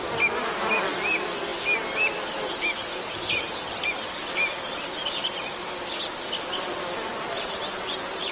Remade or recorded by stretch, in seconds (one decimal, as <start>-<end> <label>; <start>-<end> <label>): 0.0-8.3 recorded